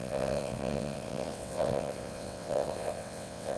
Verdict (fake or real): fake